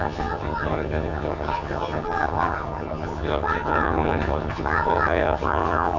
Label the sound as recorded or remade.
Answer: remade